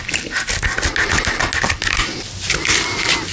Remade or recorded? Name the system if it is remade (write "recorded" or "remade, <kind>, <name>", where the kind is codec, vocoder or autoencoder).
recorded